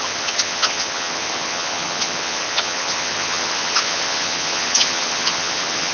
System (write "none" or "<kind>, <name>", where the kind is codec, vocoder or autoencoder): vocoder, HiFi-GAN